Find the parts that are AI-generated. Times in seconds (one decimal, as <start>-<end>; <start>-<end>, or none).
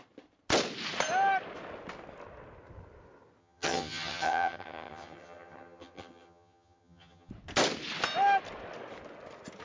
3.4-7.3